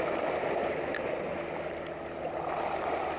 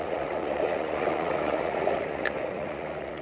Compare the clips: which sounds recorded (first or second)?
first